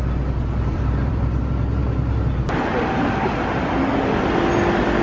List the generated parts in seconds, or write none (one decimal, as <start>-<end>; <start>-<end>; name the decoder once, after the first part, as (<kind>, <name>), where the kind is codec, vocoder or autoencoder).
0.7-1.4 (vocoder, BigVGAN v2)